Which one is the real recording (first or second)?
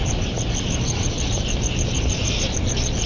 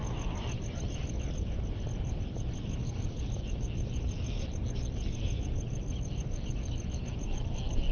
second